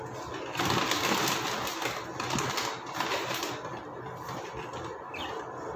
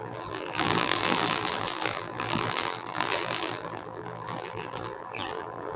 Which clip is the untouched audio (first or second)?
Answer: first